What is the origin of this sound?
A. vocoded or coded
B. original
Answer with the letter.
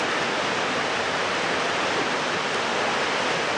B